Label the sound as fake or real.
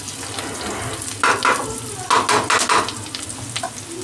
real